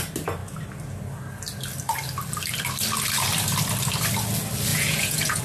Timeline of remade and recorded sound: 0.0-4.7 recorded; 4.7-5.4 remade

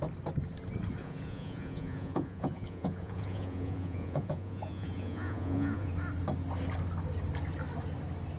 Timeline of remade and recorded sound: 0.0-1.0 recorded; 1.0-5.9 remade; 5.9-8.4 recorded

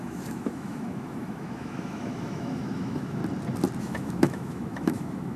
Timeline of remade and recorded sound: 0.0-3.2 remade; 3.2-3.8 recorded; 3.8-5.4 remade

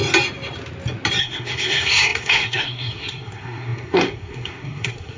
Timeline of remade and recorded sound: 0.0-1.2 recorded; 1.2-5.2 remade

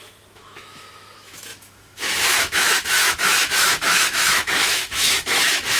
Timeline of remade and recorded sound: 0.0-5.8 remade